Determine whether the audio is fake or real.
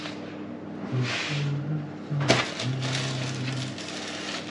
real